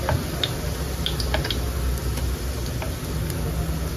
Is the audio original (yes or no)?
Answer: yes